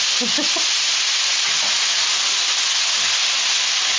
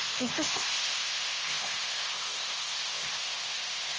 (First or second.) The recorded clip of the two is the first